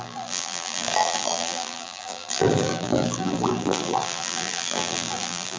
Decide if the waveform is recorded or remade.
remade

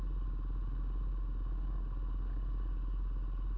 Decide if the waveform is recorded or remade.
recorded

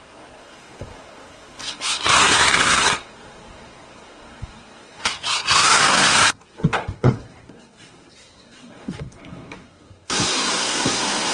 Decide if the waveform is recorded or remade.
remade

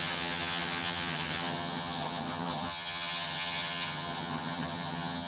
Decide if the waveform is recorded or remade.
remade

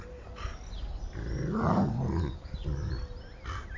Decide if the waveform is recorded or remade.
recorded